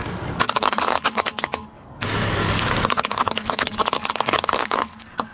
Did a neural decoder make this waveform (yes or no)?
yes